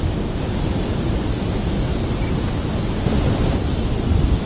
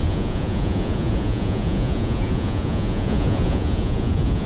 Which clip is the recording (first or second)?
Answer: first